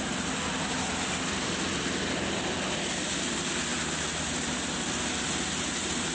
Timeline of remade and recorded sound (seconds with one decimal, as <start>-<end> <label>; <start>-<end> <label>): 0.0-6.1 recorded